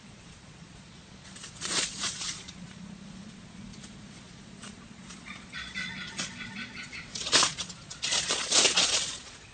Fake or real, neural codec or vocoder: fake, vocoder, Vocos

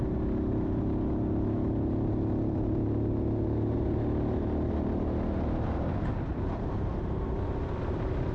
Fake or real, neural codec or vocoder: real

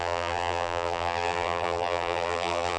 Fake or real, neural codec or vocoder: fake, vocoder, BigVGAN v2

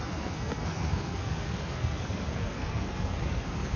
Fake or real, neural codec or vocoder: fake, codec, SNAC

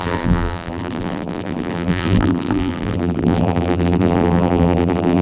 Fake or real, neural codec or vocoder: fake, vocoder, BigVGAN v2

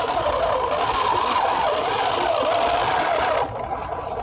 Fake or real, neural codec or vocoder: real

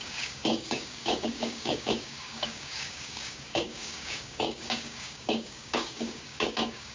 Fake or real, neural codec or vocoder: fake, codec, DAC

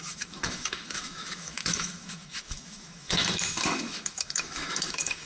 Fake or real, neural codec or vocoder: fake, autoencoder, DAC-VAE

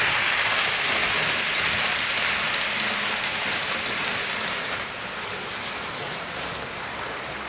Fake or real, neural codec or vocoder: real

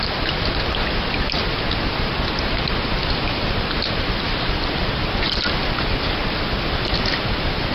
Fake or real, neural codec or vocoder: real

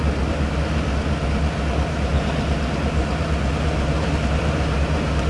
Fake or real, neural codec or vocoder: real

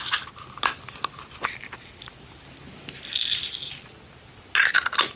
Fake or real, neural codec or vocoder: real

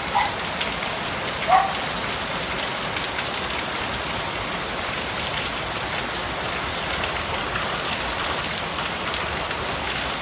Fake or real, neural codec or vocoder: real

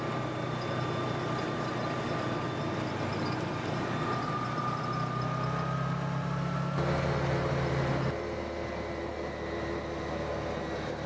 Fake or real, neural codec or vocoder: real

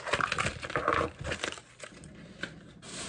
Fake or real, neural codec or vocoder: real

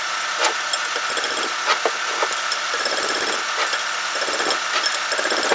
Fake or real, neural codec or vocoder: real